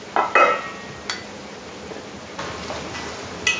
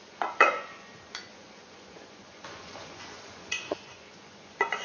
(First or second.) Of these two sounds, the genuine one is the first